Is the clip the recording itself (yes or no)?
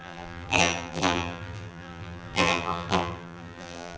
no